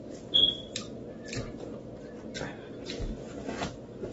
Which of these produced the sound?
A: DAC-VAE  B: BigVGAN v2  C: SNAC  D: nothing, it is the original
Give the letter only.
D